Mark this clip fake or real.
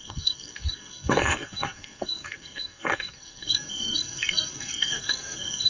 fake